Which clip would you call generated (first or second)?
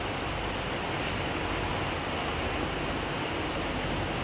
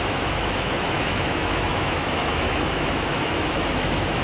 second